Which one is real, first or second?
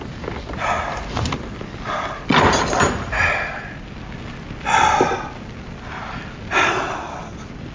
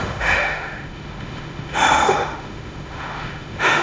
first